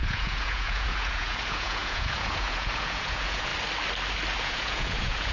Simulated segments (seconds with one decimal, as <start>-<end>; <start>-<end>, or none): 0.0-3.5; 4.4-5.3